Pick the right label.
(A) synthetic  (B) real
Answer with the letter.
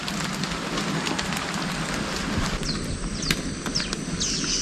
B